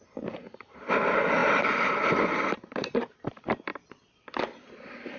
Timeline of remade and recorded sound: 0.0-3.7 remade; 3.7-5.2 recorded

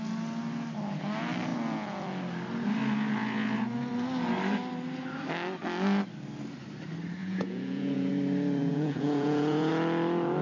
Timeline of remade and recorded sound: 0.0-7.2 recorded; 7.2-8.1 remade; 8.1-8.6 recorded; 8.6-9.7 remade; 9.7-10.4 recorded

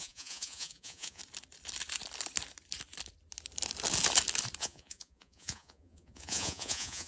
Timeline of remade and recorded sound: 0.0-1.2 remade; 1.2-4.6 recorded; 4.6-7.1 remade

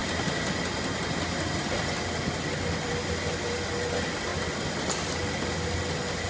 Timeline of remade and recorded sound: 0.0-6.3 recorded

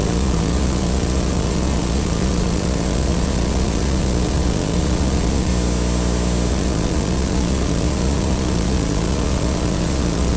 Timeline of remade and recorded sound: 0.0-5.5 remade; 5.5-6.5 recorded; 6.5-10.4 remade

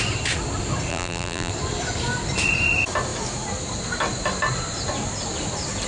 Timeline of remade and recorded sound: 0.0-0.9 recorded; 0.9-1.5 remade; 1.5-5.9 recorded

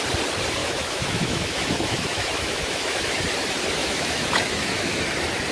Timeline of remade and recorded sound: 0.0-0.6 recorded; 0.6-3.2 remade; 3.2-3.8 recorded; 3.8-5.0 remade; 5.0-5.5 recorded